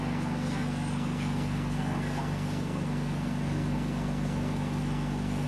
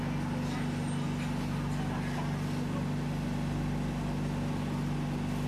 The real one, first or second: second